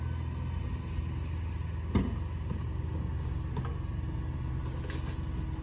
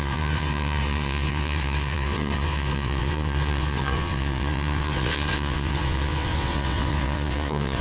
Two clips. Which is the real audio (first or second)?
first